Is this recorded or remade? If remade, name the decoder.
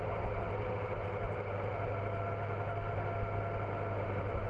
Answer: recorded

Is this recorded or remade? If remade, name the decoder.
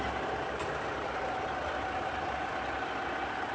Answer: recorded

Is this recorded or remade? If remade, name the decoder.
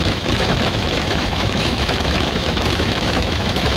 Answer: remade, autoencoder, DAC-VAE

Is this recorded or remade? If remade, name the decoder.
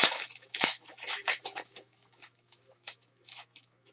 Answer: remade, autoencoder, DAC-VAE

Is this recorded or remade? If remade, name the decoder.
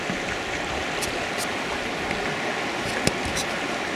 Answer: recorded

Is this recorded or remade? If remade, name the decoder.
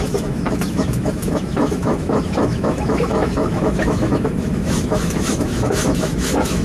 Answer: remade, autoencoder, DAC-VAE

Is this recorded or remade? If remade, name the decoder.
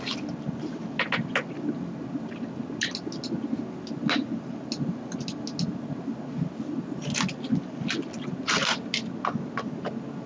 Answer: recorded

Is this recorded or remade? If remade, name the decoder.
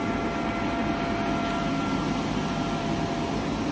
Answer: recorded